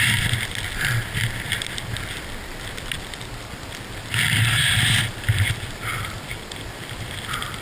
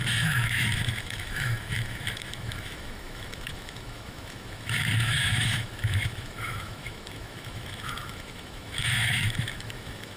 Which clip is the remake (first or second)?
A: second